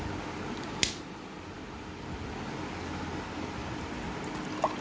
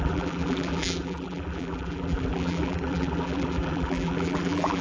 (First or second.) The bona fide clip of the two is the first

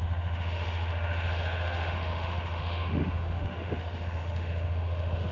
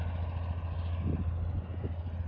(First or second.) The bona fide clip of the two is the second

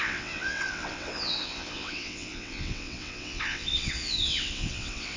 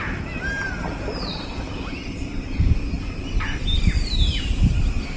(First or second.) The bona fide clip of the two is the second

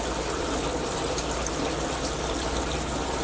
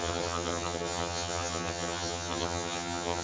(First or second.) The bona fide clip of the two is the first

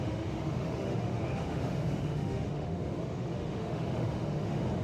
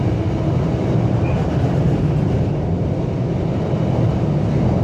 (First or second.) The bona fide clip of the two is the second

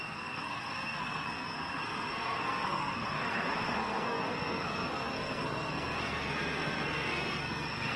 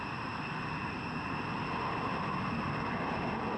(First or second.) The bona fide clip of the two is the second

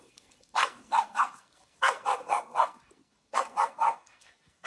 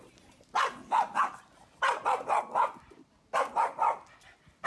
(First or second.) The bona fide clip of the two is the second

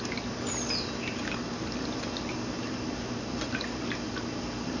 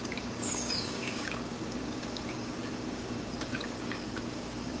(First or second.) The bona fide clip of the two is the first